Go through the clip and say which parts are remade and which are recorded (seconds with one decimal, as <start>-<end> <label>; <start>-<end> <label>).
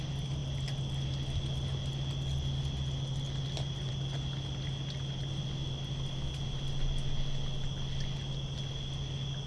0.0-9.5 recorded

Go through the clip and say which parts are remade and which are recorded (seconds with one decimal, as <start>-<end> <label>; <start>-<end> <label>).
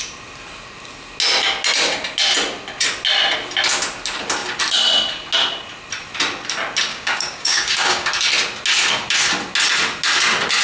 0.0-6.9 recorded; 6.9-8.1 remade; 8.1-10.6 recorded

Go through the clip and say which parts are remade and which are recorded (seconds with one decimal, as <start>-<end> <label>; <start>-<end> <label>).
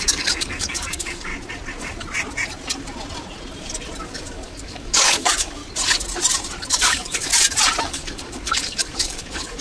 0.0-1.3 remade; 1.3-4.0 recorded; 4.0-5.6 remade; 5.6-6.7 recorded; 6.7-7.3 remade; 7.3-7.8 recorded; 7.8-9.6 remade